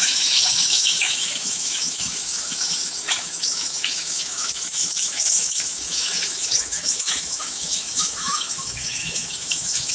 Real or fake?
fake